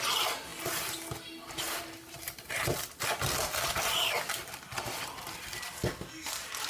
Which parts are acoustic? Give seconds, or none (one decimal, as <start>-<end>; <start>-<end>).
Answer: 0.0-6.7